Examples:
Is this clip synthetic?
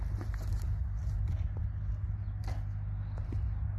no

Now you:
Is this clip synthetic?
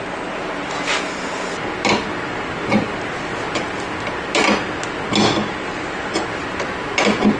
no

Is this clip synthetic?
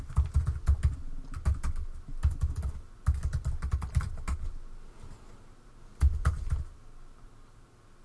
no